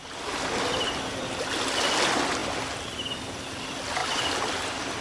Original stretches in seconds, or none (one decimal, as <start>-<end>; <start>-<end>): 0.0-5.0